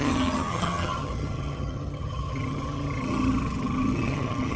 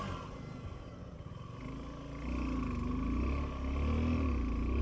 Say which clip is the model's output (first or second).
first